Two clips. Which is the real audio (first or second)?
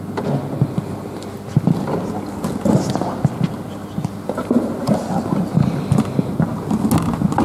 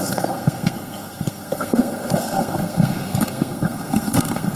first